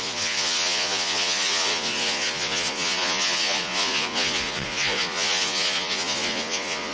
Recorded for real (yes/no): no